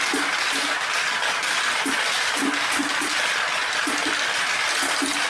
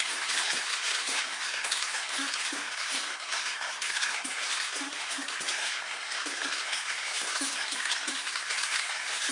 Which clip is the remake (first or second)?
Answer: second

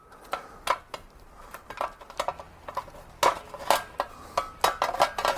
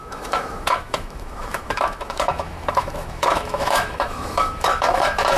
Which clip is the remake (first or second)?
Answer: second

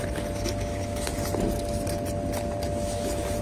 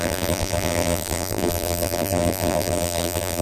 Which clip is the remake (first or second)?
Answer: second